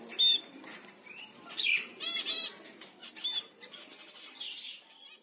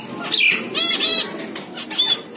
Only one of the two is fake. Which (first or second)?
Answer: first